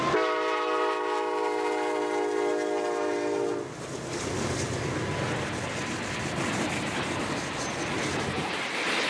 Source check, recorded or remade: recorded